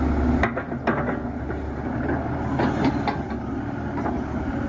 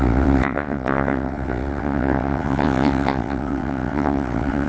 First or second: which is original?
first